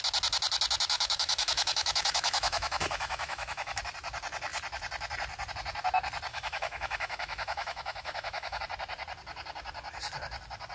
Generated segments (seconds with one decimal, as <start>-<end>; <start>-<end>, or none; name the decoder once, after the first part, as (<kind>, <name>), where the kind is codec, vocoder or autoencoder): 0.9-3.8 (autoencoder, DAC-VAE); 6.3-8.6